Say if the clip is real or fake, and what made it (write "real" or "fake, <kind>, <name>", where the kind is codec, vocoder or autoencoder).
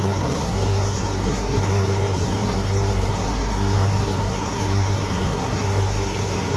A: fake, codec, SNAC